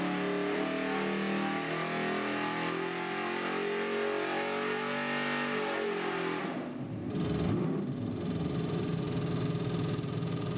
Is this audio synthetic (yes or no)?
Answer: no